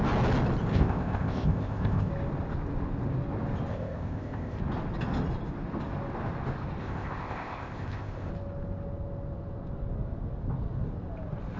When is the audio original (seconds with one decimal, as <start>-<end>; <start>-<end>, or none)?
0.0-0.7; 2.1-3.7; 4.6-6.8; 8.3-11.6